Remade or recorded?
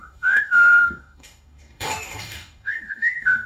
remade